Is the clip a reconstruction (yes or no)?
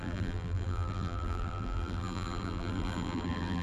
yes